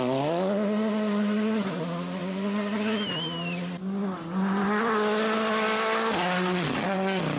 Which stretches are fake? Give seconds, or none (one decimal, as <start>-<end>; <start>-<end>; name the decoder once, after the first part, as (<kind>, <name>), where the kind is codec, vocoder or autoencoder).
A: none

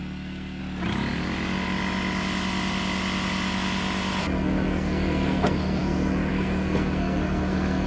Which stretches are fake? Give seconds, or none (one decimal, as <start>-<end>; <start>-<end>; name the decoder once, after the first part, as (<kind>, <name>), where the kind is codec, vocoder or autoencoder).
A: 0.0-0.6 (codec, SNAC); 4.2-7.9

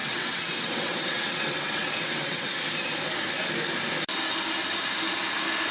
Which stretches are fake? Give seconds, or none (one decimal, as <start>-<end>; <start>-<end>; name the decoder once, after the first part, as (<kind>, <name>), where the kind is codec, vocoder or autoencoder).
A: 0.0-2.5 (vocoder, WaveNeXt)

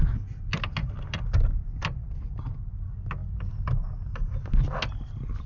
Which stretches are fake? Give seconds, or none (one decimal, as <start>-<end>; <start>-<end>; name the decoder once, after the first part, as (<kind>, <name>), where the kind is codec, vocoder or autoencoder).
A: 3.2-4.6 (vocoder, BigVGAN v2)

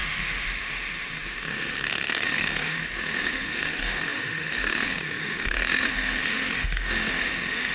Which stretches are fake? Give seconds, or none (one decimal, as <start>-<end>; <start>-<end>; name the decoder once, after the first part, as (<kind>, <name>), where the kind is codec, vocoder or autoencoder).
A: 0.0-7.7 (autoencoder, DAC-VAE)